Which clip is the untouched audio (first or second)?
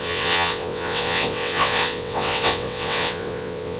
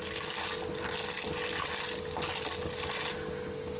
second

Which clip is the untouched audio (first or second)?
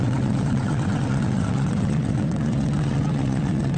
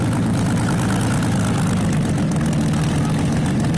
second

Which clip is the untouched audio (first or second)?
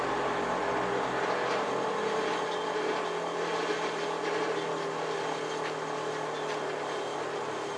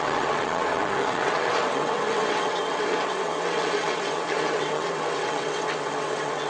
first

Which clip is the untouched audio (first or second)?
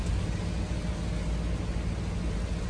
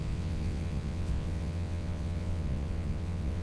first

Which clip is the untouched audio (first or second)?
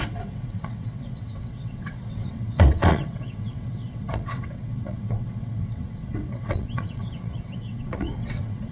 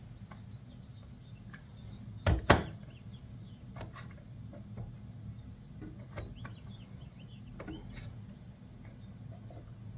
second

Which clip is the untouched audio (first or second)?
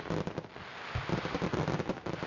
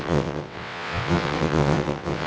first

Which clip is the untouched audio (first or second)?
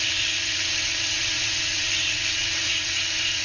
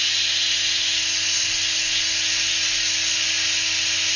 second